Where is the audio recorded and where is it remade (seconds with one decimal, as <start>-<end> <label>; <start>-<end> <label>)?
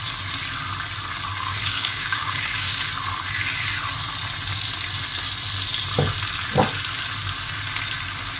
0.0-1.3 recorded; 1.3-2.9 remade; 2.9-8.4 recorded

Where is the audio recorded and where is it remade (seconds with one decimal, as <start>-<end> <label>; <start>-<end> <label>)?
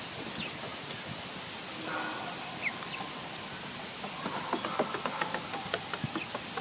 0.0-6.6 recorded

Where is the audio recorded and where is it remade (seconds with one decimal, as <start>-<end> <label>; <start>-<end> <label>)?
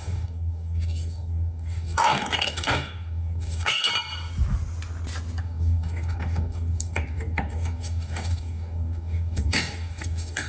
0.0-3.9 remade; 3.9-5.4 recorded; 5.4-10.5 remade